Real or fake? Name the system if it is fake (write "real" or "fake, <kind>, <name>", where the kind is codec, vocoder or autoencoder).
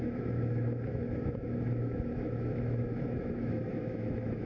fake, autoencoder, DAC-VAE